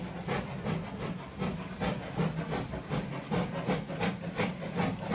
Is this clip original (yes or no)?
yes